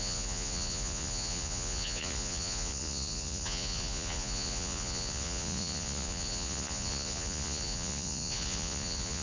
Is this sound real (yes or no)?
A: no